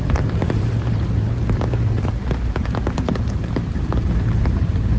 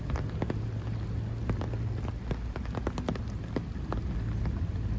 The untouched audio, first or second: second